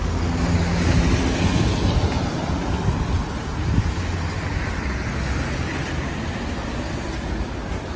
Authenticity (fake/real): real